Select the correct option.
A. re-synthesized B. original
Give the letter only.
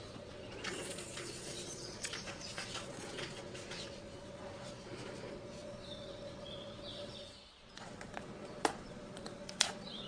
A